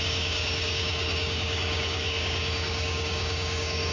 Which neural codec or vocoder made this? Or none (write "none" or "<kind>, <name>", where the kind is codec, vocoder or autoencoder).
codec, DAC